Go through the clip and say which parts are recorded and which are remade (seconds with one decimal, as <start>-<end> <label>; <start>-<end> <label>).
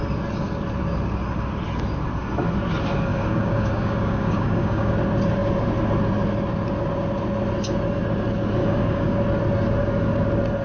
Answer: 0.0-3.1 recorded; 3.1-4.9 remade; 4.9-8.6 recorded; 8.6-9.2 remade; 9.2-10.6 recorded